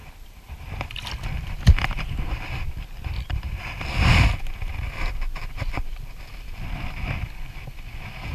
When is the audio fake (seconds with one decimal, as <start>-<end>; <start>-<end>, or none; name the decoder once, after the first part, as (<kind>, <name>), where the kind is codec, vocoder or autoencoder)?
0.0-1.1 (vocoder, BigVGAN v2)